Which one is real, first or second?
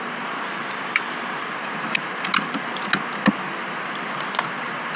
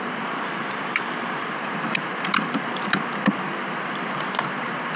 first